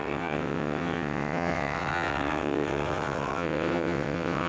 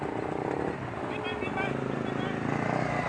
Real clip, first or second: second